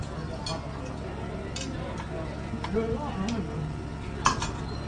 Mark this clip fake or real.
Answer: real